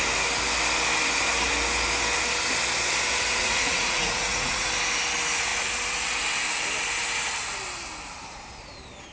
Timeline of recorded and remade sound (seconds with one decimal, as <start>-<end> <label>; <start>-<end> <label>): 0.0-3.4 recorded; 3.4-4.7 remade; 4.7-9.1 recorded